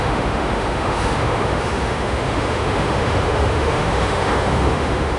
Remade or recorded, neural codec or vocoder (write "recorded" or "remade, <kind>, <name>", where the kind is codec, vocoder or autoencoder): remade, autoencoder, DAC-VAE